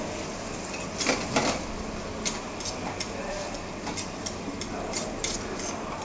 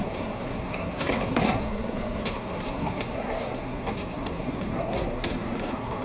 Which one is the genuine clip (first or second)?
first